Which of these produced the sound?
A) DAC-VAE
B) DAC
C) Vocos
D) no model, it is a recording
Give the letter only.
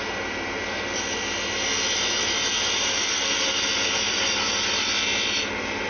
D